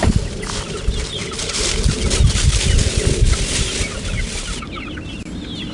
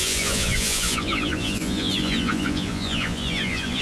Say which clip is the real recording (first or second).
first